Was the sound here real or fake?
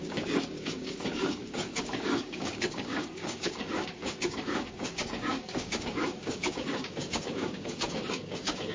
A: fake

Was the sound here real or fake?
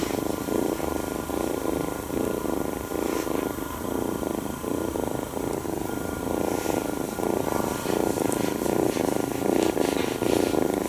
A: real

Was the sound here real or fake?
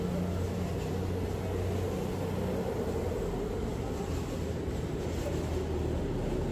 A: real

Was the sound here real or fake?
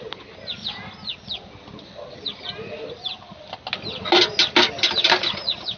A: real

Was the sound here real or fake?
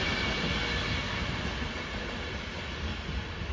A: real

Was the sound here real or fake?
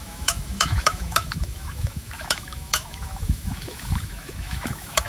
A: fake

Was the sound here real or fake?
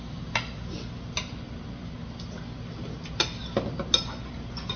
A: real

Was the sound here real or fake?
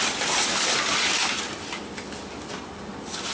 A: real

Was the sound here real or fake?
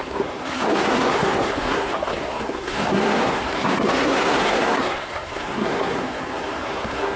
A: fake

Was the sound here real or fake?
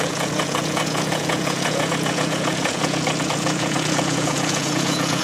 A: fake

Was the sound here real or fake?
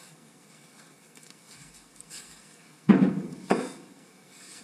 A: fake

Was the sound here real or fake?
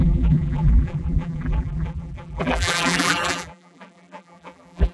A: fake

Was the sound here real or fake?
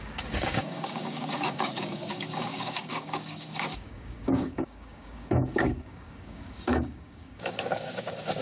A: fake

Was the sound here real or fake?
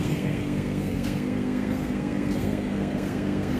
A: fake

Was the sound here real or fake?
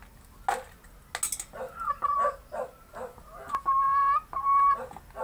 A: real